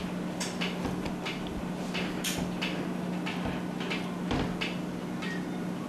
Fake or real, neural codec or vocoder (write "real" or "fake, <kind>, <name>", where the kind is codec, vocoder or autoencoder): real